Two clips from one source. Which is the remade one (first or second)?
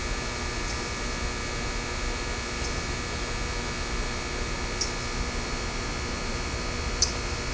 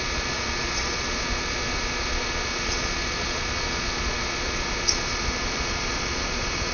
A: second